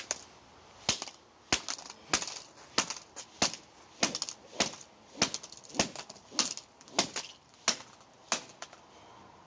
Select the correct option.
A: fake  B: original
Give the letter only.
B